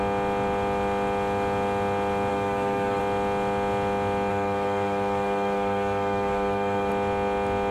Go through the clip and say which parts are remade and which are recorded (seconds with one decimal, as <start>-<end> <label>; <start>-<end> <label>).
0.0-2.3 recorded; 2.3-3.0 remade; 3.0-4.3 recorded; 4.3-6.9 remade; 6.9-7.7 recorded